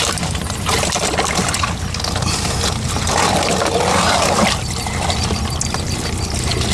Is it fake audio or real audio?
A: real